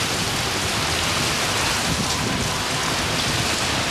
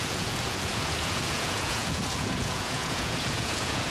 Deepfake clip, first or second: second